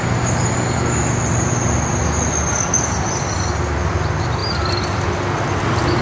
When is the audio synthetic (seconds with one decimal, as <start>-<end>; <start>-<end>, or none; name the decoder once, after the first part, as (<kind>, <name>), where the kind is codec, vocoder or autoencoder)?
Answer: none

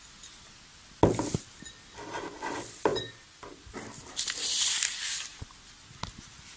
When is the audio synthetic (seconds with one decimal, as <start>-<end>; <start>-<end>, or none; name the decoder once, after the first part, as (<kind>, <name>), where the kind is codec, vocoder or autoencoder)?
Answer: none